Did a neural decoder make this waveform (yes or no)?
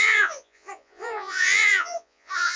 yes